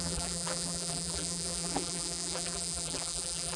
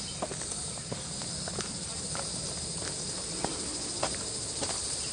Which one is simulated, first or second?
first